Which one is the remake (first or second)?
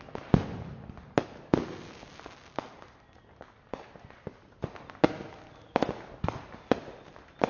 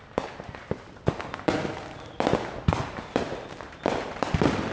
second